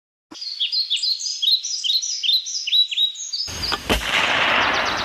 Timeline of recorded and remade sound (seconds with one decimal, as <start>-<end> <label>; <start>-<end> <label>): 0.0-5.0 recorded